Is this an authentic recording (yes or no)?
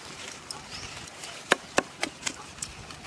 no